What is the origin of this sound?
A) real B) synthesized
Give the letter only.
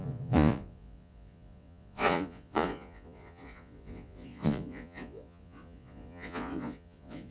B